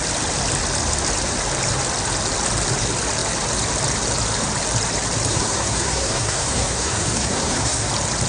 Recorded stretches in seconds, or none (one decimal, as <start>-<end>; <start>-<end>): 0.0-5.3; 7.9-8.3

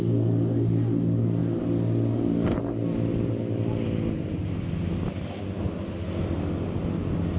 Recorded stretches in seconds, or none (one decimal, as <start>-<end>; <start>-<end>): 0.0-7.4

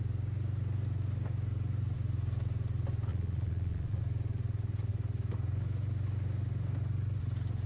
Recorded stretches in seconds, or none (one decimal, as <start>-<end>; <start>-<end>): 0.0-3.1; 4.0-7.7

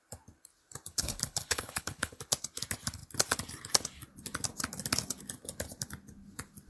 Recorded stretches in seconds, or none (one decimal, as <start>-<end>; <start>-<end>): 0.0-0.9; 2.2-6.7

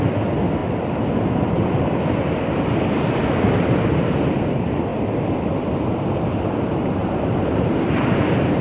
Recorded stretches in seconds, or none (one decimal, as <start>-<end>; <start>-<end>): 0.0-7.0; 7.7-8.6

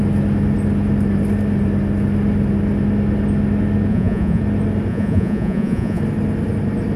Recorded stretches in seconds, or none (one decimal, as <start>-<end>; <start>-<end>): 0.0-3.9; 4.4-4.9; 6.0-7.0